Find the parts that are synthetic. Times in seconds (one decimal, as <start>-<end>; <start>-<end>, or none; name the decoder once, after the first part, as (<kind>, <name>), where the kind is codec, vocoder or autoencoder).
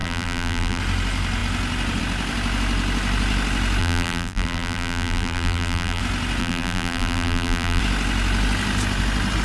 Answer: 0.0-0.8 (vocoder, BigVGAN v2); 3.8-6.0; 6.4-7.8